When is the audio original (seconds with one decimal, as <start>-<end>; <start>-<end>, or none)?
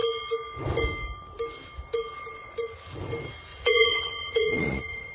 0.0-3.5